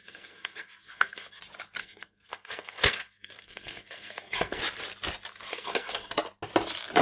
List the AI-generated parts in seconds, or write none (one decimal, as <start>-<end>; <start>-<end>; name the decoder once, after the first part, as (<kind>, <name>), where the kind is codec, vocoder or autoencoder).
0.0-1.4 (codec, SNAC); 1.8-4.6; 5.5-6.1